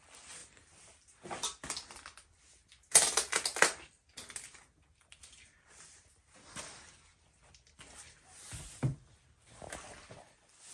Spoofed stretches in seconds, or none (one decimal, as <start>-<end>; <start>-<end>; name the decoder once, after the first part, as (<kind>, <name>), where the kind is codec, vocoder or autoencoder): none